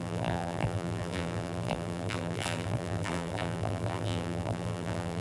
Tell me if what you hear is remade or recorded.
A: remade